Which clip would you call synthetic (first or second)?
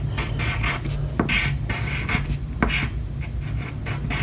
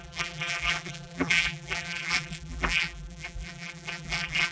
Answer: second